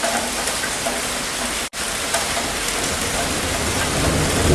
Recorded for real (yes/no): yes